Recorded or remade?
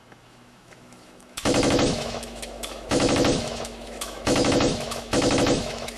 remade